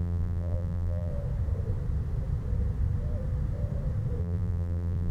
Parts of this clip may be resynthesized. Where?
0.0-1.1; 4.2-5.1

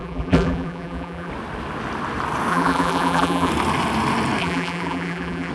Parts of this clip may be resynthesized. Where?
0.0-1.3; 2.5-3.5; 4.4-5.5

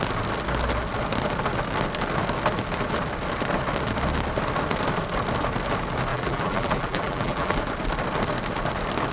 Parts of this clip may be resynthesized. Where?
6.1-7.6

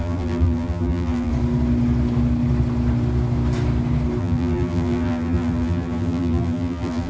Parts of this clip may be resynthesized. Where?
0.0-1.3; 4.2-7.1

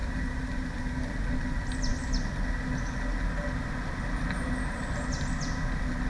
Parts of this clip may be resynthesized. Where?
0.0-0.8

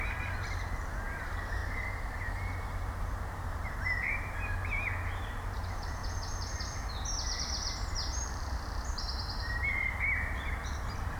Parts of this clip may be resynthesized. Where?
0.0-6.0; 7.4-11.2

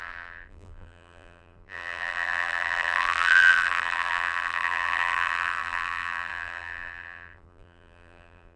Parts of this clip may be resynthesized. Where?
0.0-8.6